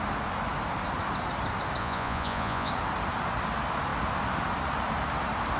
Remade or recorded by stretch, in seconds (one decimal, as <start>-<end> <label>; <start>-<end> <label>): 0.0-1.8 recorded; 1.8-2.7 remade; 2.7-5.6 recorded